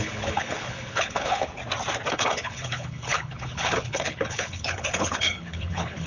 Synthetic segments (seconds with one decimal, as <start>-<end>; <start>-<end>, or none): 0.0-1.6; 2.1-6.1